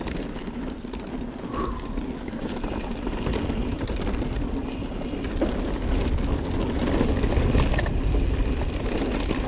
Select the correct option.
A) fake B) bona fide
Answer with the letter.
B